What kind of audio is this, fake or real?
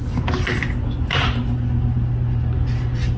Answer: real